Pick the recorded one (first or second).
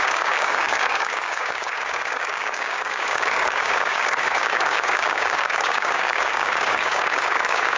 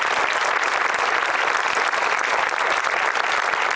second